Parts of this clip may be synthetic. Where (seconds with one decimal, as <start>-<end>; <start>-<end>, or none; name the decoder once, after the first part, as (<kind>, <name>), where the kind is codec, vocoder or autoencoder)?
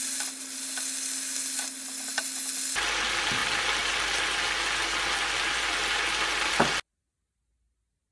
none